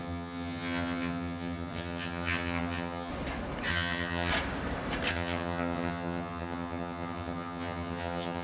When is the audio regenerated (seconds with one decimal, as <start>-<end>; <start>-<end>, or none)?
0.0-3.1; 3.7-4.3; 5.1-8.4